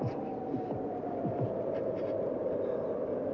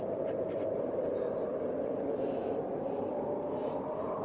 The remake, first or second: second